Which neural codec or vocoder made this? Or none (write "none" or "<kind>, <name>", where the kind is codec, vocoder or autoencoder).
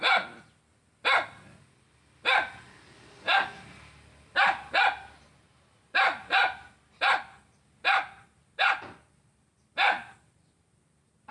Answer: none